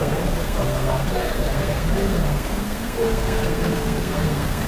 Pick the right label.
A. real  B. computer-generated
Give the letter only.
B